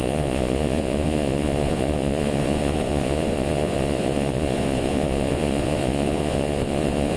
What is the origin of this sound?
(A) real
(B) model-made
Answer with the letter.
B